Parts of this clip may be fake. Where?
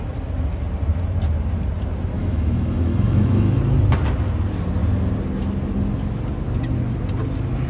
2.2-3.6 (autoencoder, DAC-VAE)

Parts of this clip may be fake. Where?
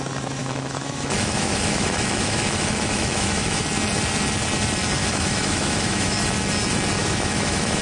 0.4-3.6 (autoencoder, DAC-VAE); 5.0-6.3; 7.0-7.8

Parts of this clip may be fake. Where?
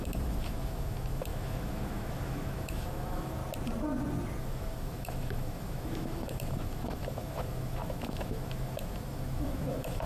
0.0-3.4 (autoencoder, DAC-VAE); 4.4-10.1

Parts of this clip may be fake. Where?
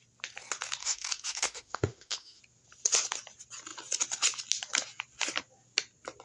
0.8-2.4 (autoencoder, DAC-VAE)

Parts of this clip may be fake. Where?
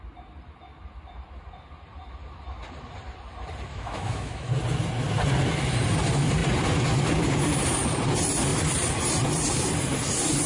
3.7-4.5 (autoencoder, DAC-VAE)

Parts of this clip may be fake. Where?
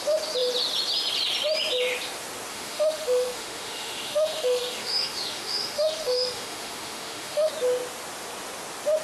2.5-7.5 (autoencoder, DAC-VAE)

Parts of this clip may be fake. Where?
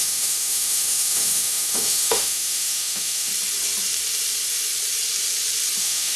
0.0-3.3 (autoencoder, DAC-VAE); 5.8-6.2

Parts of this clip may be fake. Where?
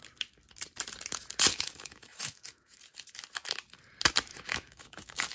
1.5-2.8 (autoencoder, DAC-VAE); 4.3-5.3